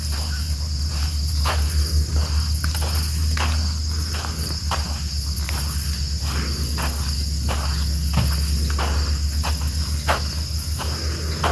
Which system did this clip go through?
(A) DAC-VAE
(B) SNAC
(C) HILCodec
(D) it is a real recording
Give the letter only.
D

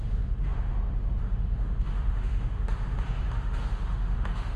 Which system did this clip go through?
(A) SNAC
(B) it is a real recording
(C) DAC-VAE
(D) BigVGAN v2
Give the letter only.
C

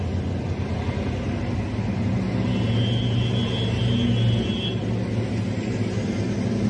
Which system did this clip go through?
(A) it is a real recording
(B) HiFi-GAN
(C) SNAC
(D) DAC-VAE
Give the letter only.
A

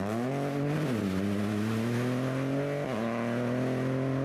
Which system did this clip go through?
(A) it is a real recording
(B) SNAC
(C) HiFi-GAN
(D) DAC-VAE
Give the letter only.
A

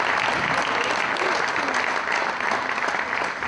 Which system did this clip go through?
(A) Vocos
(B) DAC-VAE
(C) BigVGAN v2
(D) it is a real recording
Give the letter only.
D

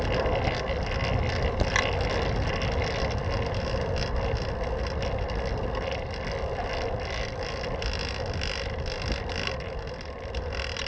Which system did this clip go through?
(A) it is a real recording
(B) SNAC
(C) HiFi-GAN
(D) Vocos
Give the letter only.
A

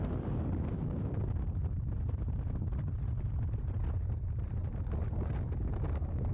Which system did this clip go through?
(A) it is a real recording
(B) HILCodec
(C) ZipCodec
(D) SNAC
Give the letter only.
A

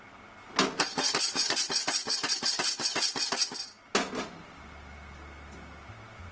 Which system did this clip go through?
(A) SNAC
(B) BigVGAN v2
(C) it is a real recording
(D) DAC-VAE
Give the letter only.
C